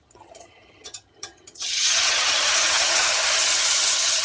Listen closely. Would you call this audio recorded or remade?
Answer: remade